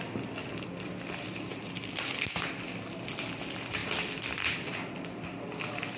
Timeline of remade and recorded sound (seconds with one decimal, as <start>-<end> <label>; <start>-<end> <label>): 0.0-6.0 recorded